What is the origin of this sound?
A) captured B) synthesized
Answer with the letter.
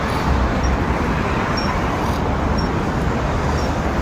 A